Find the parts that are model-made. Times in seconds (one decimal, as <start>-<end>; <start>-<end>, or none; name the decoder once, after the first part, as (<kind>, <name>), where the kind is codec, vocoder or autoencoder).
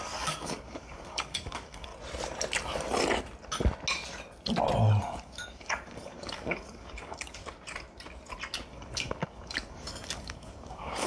0.0-1.9 (codec, DAC); 5.0-7.4; 8.7-11.1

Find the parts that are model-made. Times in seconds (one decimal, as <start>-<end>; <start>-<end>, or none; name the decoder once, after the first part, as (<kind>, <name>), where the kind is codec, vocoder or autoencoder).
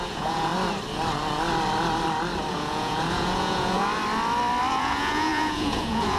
0.0-0.5 (vocoder, Vocos); 2.5-4.0; 4.7-6.2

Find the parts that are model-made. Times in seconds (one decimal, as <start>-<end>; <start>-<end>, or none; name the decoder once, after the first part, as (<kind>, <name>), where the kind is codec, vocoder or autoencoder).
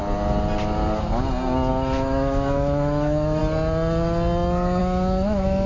1.7-3.4 (autoencoder, DAC-VAE); 4.8-5.7